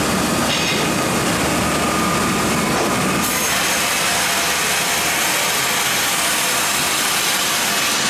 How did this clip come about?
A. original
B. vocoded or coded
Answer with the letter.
A